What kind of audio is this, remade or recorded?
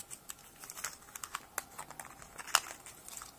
recorded